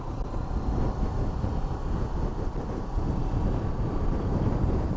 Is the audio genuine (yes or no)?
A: yes